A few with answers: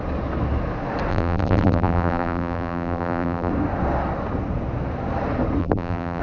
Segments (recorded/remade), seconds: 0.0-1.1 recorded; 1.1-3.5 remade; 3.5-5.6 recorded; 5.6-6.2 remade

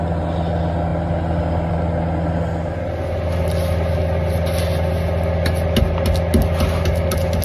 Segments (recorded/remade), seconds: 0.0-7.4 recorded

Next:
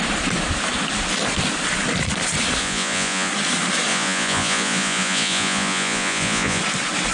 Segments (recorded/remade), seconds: 0.0-2.6 recorded; 2.6-3.3 remade; 3.3-3.9 recorded; 3.9-6.6 remade; 6.6-7.1 recorded

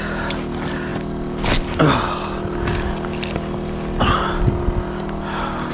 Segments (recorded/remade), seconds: 0.0-5.7 recorded

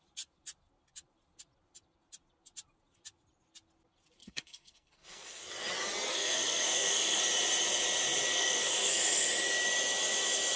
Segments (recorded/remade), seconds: 0.0-4.2 recorded; 4.2-5.4 remade; 5.4-6.1 recorded; 6.1-7.2 remade; 7.2-8.3 recorded; 8.3-9.3 remade; 9.3-10.6 recorded

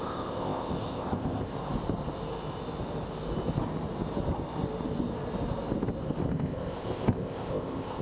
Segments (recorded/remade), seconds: 0.0-1.5 remade; 1.5-6.3 recorded; 6.3-8.0 remade